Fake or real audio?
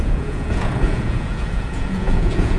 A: fake